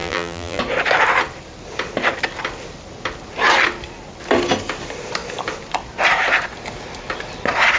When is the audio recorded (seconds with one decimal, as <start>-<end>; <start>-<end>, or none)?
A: 0.6-7.8